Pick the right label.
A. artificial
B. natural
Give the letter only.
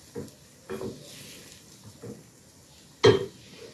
B